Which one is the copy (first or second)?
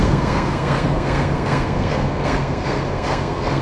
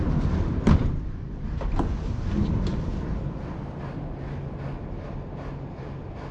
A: first